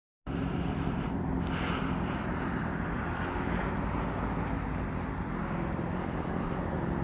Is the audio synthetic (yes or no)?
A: no